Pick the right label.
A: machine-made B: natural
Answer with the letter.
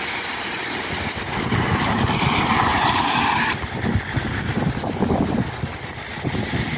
B